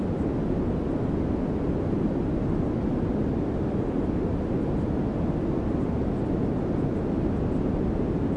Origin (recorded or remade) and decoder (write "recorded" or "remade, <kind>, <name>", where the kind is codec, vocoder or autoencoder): recorded